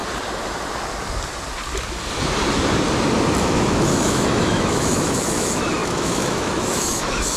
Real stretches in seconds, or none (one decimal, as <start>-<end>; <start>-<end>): 0.0-3.4